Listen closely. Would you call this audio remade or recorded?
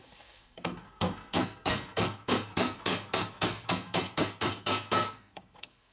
remade